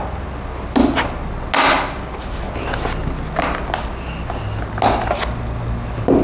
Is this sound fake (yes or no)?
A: no